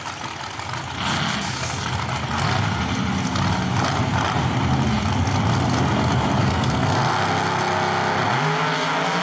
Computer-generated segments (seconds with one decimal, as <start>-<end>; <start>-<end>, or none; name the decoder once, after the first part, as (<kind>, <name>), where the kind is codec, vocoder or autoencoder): 6.4-7.0 (codec, SNAC)